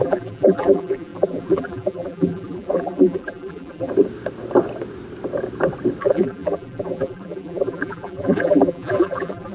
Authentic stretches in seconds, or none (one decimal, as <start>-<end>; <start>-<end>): 3.9-6.0